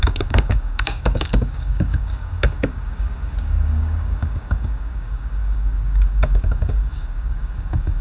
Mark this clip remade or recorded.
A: remade